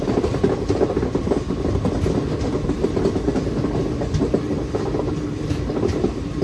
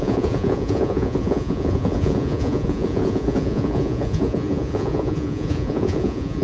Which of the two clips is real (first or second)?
first